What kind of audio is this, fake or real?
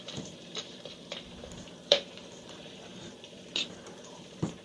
fake